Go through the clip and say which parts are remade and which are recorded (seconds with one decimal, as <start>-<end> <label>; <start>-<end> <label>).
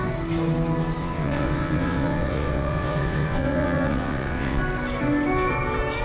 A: 0.0-1.0 recorded; 1.0-4.6 remade; 4.6-6.0 recorded